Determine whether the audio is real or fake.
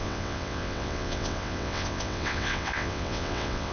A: fake